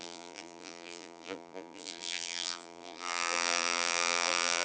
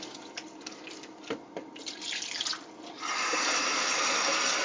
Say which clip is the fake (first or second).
first